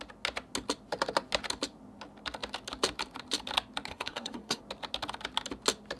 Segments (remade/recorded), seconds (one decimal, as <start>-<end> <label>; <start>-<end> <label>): 0.0-3.9 recorded; 3.9-4.6 remade; 4.6-6.0 recorded